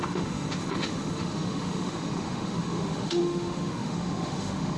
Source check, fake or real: fake